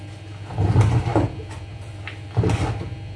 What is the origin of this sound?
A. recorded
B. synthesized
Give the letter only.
B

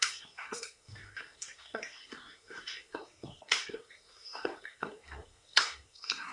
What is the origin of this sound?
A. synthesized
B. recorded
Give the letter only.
A